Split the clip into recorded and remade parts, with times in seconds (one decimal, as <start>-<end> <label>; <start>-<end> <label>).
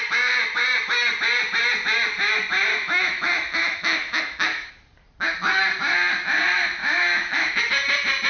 0.0-2.7 recorded; 2.7-4.7 remade; 4.7-6.8 recorded; 6.8-7.6 remade; 7.6-8.3 recorded